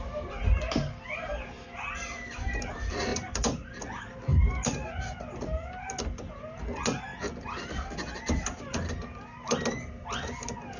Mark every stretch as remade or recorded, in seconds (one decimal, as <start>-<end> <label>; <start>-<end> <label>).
0.0-3.1 recorded; 3.1-3.8 remade; 3.8-7.1 recorded; 7.1-7.6 remade; 7.6-10.8 recorded